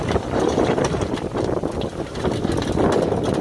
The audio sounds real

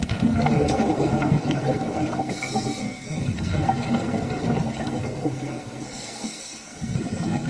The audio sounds fake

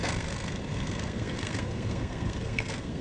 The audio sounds fake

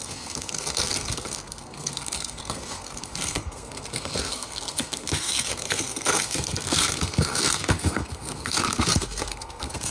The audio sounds fake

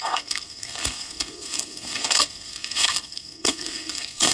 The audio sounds fake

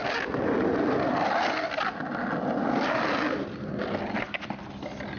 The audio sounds real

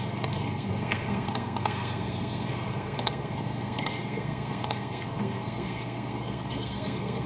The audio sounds fake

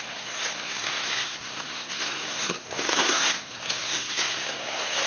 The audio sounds fake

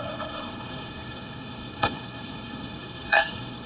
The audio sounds fake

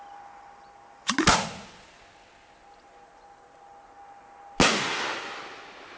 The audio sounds real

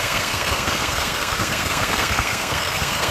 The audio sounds fake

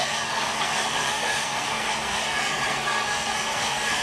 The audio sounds fake